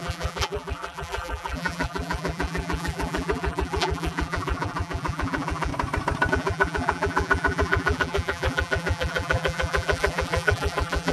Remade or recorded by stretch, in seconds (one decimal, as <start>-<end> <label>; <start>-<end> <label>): 0.0-5.7 remade; 5.7-6.3 recorded; 6.3-11.1 remade